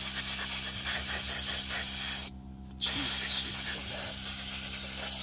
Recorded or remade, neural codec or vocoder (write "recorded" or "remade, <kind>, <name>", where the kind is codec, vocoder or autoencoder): recorded